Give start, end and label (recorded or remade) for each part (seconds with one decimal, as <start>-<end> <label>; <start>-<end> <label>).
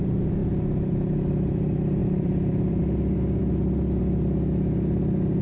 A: 0.0-2.0 recorded; 2.0-2.8 remade; 2.8-5.4 recorded